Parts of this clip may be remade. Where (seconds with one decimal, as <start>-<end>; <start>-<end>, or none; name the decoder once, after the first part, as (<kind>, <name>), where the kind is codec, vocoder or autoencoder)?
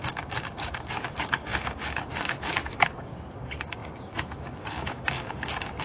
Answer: 0.0-5.8 (codec, DAC)